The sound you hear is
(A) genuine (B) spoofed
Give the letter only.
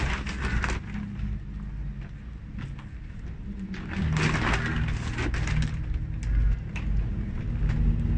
A